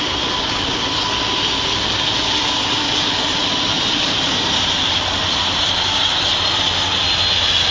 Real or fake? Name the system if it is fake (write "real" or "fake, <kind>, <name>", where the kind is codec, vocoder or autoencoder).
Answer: real